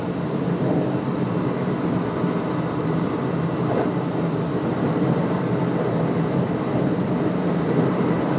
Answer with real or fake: real